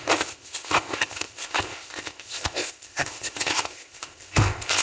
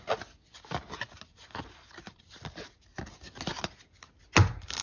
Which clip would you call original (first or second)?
second